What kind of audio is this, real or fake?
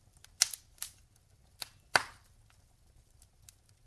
real